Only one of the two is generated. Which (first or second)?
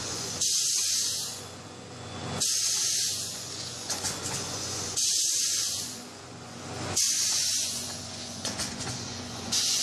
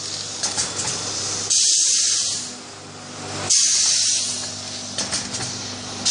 first